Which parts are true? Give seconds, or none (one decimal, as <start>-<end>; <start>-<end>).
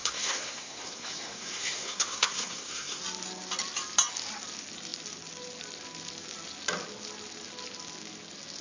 3.0-8.6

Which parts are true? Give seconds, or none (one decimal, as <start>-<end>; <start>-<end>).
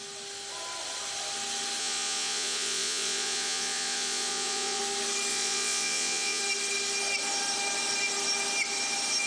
0.0-1.8; 4.8-5.3; 6.4-9.3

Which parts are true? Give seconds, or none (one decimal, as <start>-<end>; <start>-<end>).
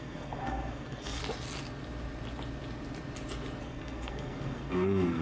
1.2-3.6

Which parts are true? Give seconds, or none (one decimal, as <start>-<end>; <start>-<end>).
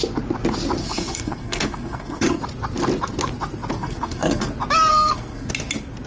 0.0-0.8; 2.4-3.7; 4.5-4.9; 5.5-6.1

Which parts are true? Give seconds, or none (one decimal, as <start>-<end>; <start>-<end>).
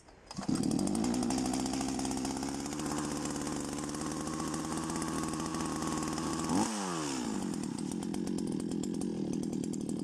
0.0-10.0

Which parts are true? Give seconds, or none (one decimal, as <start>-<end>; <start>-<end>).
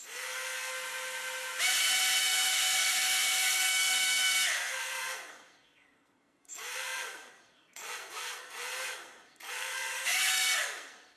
0.7-2.2